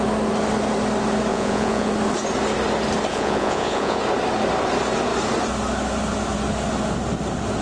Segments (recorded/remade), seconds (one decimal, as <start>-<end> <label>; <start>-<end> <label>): 0.0-1.3 recorded; 1.3-1.9 remade; 1.9-3.1 recorded; 3.1-4.0 remade; 4.0-7.6 recorded